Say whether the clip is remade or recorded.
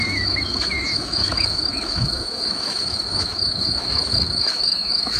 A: remade